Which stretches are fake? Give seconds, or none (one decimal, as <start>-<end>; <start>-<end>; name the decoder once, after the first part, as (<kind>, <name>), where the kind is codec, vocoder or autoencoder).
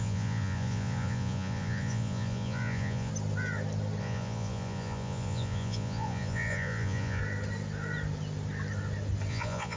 0.0-3.1 (vocoder, Vocos); 4.0-7.2; 9.3-9.8